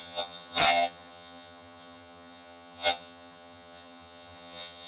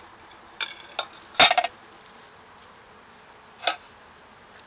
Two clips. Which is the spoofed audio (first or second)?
first